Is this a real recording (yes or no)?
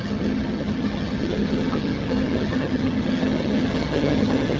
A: no